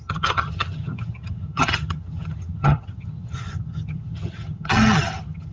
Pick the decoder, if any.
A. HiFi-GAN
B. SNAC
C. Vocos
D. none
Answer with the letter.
A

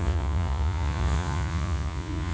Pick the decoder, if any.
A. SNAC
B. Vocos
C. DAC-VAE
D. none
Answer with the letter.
B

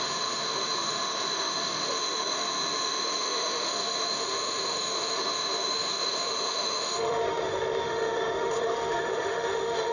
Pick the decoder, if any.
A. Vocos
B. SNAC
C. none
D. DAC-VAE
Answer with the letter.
D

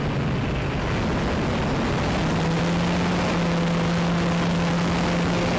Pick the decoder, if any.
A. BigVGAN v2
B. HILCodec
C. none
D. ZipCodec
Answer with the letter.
C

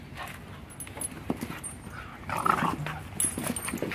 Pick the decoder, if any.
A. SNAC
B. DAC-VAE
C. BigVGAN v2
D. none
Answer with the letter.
D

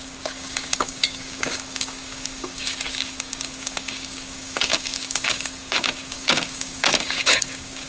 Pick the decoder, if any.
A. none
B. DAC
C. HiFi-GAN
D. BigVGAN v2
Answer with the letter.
B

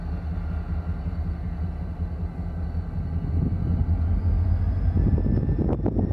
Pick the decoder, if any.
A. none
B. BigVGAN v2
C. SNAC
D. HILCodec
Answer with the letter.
A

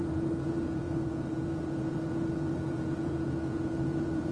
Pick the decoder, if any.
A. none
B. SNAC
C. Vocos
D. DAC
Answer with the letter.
C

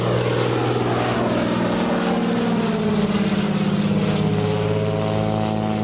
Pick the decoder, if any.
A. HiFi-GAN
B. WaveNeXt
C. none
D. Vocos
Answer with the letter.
C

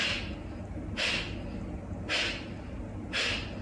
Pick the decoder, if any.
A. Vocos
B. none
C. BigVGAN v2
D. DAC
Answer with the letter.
B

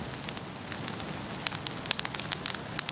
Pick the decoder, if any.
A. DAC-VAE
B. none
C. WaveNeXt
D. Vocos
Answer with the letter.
B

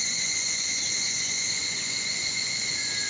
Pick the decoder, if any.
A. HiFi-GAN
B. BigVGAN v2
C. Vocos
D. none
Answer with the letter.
C